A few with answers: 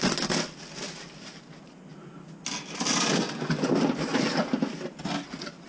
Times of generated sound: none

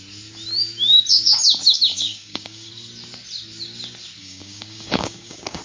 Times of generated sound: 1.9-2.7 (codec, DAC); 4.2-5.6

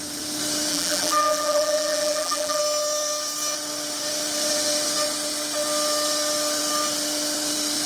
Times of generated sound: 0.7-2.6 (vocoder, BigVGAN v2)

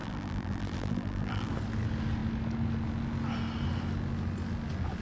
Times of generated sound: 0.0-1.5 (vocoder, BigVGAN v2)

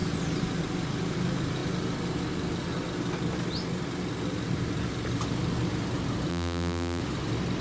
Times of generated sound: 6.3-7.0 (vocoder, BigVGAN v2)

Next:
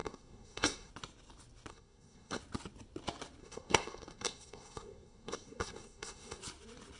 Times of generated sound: 0.0-0.9 (codec, SNAC); 1.7-2.4; 3.4-6.4